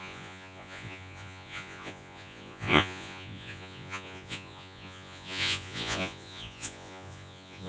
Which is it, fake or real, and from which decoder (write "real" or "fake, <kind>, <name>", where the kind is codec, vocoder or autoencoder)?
fake, vocoder, Vocos